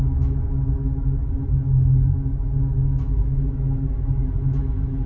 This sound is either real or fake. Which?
fake